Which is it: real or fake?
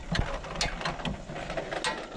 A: real